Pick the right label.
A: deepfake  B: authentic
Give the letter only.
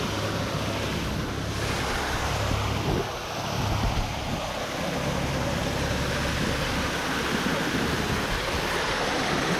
B